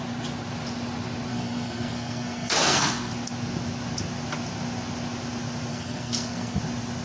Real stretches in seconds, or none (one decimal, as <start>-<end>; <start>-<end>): 0.0-1.3; 3.1-5.7; 6.6-7.0